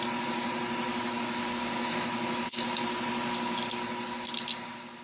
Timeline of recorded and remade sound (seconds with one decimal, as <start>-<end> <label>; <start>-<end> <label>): 0.0-5.0 recorded

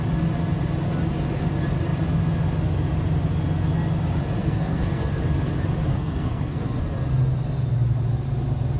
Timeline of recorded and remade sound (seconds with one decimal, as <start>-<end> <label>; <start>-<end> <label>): 0.0-4.4 recorded; 4.4-5.2 remade; 5.2-5.9 recorded; 5.9-6.8 remade; 6.8-8.8 recorded

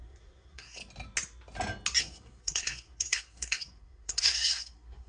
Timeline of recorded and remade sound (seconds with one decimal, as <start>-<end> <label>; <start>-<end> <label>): 0.0-0.8 remade; 0.8-2.0 recorded; 2.0-5.1 remade

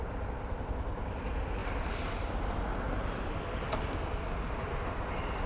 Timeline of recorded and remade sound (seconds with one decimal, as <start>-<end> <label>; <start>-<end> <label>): 0.0-5.5 recorded

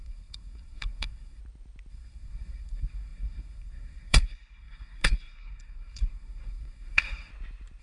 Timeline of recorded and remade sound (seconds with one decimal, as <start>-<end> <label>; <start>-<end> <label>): 0.0-1.4 remade; 1.4-1.9 recorded; 1.9-7.3 remade; 7.3-7.8 recorded